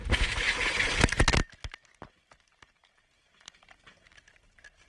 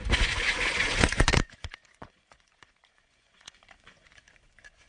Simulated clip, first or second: second